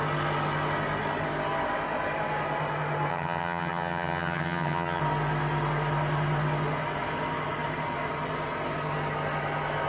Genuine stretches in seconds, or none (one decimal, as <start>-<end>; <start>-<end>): 0.0-3.1; 5.0-9.9